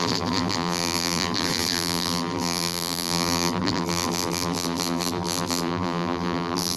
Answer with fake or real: fake